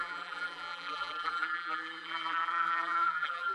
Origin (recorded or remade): remade